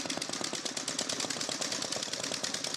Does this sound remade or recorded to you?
recorded